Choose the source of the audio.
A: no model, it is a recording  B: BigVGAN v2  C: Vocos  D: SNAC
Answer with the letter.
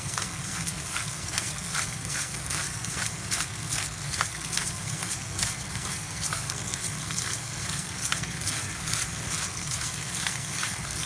D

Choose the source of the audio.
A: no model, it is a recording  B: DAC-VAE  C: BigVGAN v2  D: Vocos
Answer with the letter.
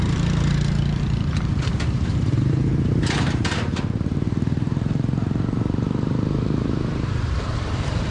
C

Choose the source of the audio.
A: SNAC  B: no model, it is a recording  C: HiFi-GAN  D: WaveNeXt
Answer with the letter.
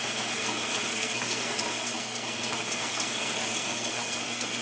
A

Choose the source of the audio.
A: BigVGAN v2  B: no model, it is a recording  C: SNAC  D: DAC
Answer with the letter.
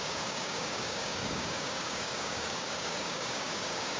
D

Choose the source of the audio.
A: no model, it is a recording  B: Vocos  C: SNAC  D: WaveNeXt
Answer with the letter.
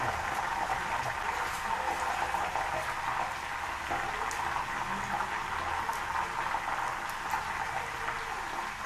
A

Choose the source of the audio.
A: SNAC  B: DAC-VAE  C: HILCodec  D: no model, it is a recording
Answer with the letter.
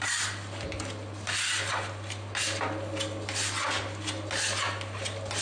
D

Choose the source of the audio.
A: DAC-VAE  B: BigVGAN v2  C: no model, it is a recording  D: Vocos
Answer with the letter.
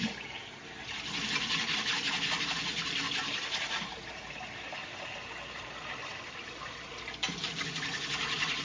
C